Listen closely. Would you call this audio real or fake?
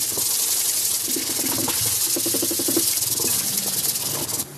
real